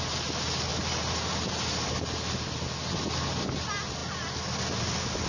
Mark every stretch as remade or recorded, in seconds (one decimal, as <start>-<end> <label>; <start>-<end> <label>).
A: 0.0-5.3 recorded